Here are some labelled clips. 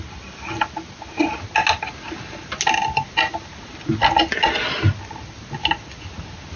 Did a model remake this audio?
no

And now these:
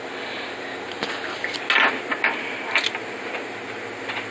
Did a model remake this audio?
no